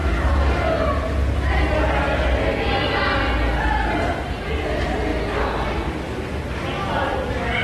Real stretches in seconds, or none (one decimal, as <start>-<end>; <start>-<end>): 0.0-7.6